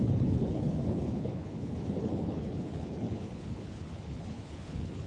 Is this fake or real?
fake